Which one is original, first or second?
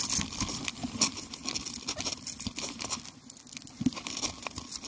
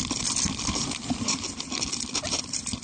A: first